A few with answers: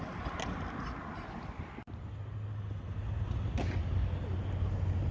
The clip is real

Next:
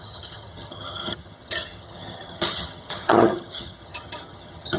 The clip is fake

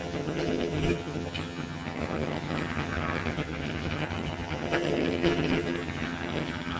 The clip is fake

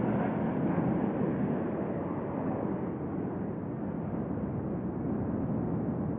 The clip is real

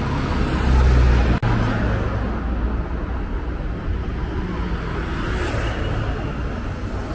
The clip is real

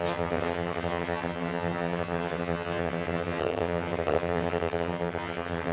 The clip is fake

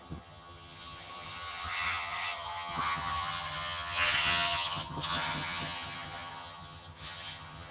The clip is fake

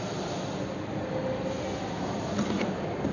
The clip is real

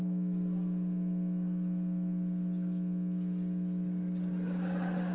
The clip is real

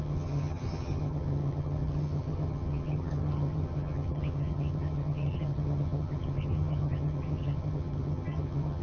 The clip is fake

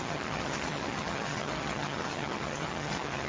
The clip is fake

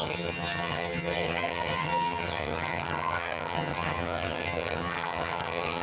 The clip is fake